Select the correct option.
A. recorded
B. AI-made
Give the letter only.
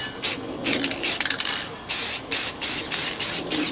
A